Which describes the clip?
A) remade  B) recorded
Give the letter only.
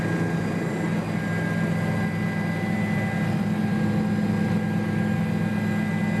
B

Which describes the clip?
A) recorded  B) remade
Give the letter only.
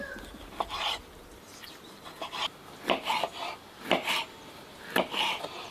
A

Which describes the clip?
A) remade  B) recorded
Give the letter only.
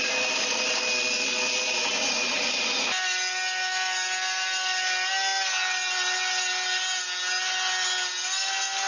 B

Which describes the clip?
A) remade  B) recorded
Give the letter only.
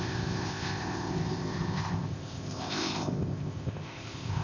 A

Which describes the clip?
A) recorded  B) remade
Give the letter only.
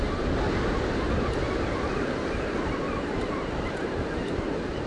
A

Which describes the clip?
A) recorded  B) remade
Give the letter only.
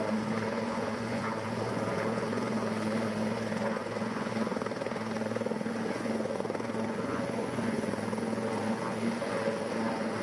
B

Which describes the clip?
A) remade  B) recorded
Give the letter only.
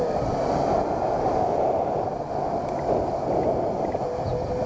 B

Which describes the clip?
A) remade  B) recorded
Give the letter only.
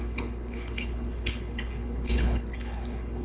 A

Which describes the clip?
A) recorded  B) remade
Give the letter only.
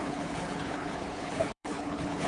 B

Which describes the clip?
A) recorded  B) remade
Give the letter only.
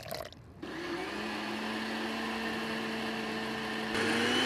A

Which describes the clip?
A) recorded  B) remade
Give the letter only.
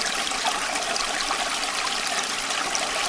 A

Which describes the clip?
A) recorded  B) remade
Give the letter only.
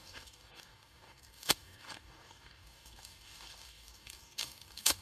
B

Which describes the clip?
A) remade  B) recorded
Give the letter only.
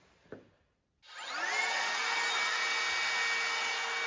B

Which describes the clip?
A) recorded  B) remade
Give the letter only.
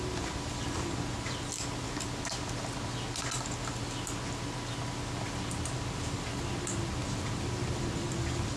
A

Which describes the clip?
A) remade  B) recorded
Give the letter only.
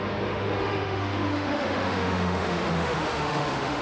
A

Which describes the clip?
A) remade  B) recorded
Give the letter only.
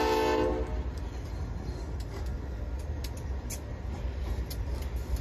B